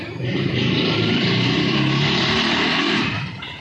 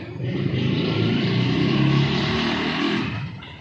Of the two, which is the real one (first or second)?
second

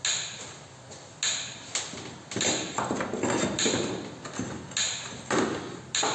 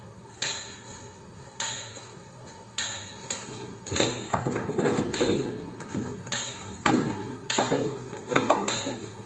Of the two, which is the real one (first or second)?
first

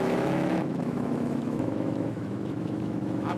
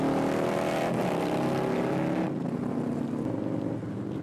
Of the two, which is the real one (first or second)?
second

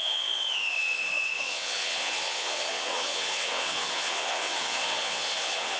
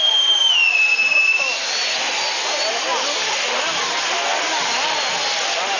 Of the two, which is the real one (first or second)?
second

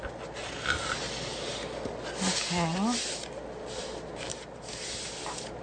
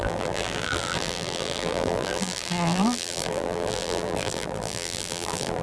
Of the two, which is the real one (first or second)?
first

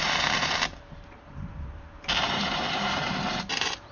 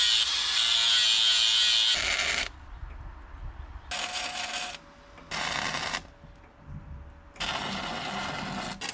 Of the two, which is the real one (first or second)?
second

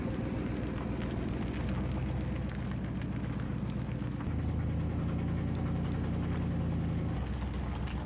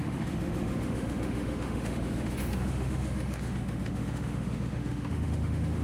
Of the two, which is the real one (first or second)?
first